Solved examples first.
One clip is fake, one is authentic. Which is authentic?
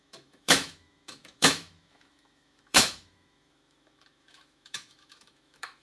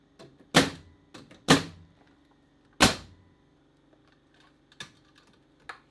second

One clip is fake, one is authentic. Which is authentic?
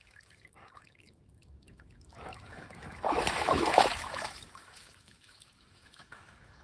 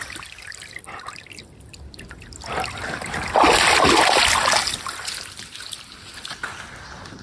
second